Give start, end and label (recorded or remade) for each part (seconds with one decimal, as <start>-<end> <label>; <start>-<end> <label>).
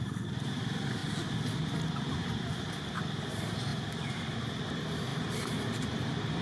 0.0-1.0 remade; 1.0-3.3 recorded; 3.3-5.1 remade; 5.1-5.6 recorded; 5.6-6.4 remade